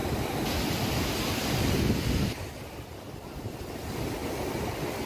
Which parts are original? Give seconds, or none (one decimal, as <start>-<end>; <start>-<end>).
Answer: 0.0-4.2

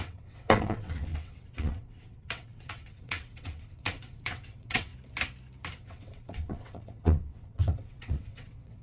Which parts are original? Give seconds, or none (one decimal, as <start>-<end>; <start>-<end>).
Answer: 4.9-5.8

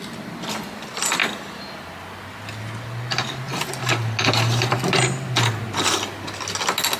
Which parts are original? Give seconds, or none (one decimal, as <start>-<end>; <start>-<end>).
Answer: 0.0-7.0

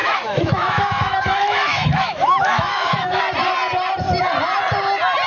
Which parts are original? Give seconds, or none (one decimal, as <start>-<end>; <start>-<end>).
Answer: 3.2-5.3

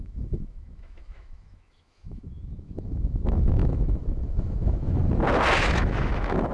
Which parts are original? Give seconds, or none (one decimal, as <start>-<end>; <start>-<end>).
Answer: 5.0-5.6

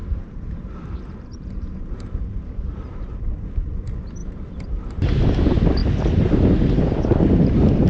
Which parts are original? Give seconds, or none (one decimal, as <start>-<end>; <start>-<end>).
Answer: 3.2-4.2; 5.3-5.8; 7.0-7.9

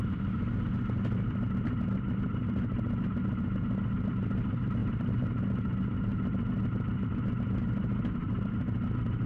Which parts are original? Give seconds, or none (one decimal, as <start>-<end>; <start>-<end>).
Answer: 0.0-4.8; 5.3-9.3

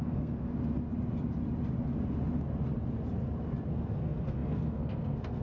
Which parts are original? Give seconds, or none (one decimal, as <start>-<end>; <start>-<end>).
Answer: 0.5-3.7